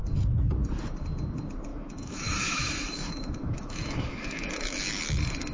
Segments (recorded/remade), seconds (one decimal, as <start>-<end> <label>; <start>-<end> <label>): 0.0-1.7 recorded; 1.7-5.0 remade; 5.0-5.5 recorded